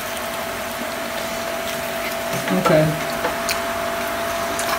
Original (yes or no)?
yes